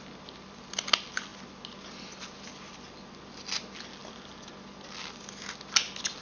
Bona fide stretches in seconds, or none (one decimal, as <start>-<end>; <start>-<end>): 0.0-6.2